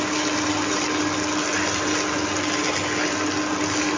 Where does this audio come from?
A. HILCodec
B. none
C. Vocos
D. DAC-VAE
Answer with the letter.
B